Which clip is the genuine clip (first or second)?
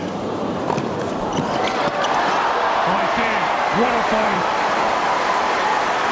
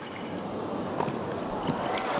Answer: second